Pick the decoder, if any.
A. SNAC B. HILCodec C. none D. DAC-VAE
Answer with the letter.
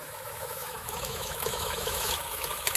D